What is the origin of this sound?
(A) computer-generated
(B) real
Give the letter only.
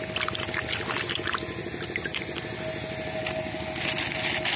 B